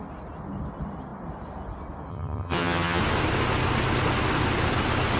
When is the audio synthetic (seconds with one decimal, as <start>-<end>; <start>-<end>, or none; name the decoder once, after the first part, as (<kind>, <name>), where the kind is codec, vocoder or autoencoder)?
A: 2.1-3.0 (vocoder, HiFi-GAN)